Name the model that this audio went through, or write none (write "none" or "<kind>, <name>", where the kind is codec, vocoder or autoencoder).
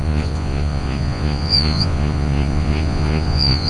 vocoder, Vocos